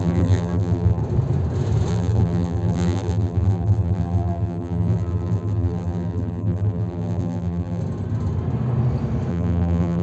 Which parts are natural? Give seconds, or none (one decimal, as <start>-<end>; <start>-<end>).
1.0-1.9; 7.8-9.3